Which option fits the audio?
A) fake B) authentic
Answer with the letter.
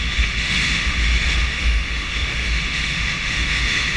A